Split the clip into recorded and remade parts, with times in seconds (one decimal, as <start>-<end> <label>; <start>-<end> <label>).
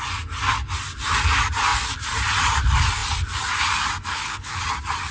0.0-4.1 recorded; 4.1-4.6 remade; 4.6-5.1 recorded